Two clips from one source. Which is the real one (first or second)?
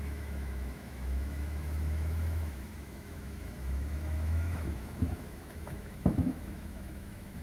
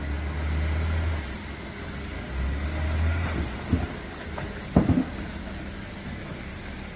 second